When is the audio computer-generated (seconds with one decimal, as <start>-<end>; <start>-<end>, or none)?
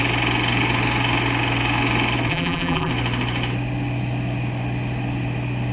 2.3-2.9